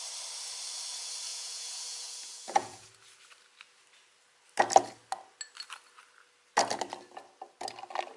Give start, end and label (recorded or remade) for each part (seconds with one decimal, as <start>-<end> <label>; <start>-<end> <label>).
0.0-1.3 recorded; 1.3-2.9 remade; 2.9-8.2 recorded